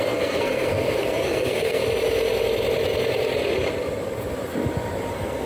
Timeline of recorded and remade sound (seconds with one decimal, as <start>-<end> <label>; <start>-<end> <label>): 0.0-1.8 remade; 1.8-5.1 recorded; 5.1-5.5 remade